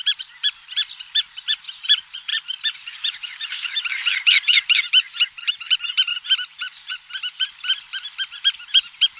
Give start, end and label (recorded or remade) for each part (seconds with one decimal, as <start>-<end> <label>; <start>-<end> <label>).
0.0-9.2 remade